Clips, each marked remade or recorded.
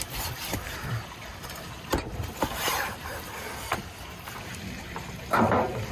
remade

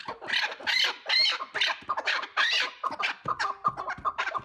recorded